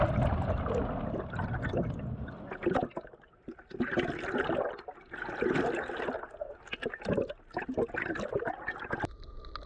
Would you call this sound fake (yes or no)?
no